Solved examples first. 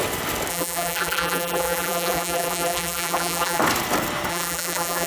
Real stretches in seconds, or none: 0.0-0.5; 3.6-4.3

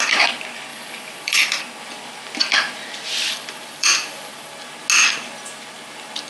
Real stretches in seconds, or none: 0.0-0.7; 1.6-3.1; 4.5-6.3

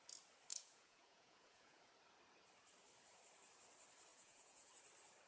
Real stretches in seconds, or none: 0.0-0.5; 1.9-4.1; 4.7-5.3

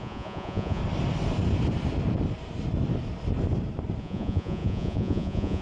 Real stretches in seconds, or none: 0.8-4.0

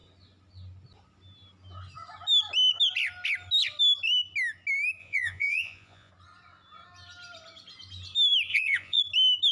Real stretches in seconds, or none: 0.0-5.0; 6.1-8.5; 9.0-9.5

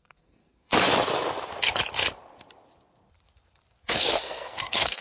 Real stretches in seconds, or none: 0.7-3.7

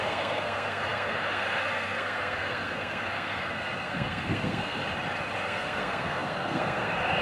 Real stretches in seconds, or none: 4.8-5.4